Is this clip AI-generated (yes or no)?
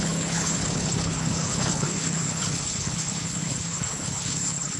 yes